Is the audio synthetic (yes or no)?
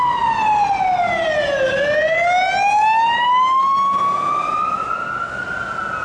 no